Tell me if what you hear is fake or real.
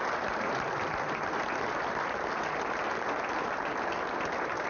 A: real